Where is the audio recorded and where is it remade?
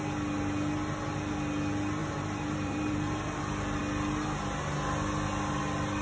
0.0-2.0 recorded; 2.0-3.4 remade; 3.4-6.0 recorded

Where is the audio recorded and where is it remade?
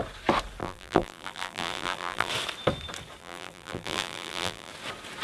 0.0-0.6 recorded; 0.6-2.3 remade; 2.3-3.2 recorded; 3.2-4.7 remade; 4.7-5.2 recorded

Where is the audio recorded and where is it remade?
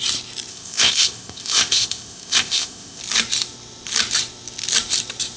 0.0-0.5 recorded; 0.5-3.0 remade; 3.0-5.4 recorded